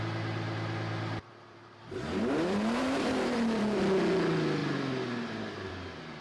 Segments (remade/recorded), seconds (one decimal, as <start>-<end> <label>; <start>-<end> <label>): 0.0-1.2 recorded; 1.2-3.8 remade; 3.8-6.2 recorded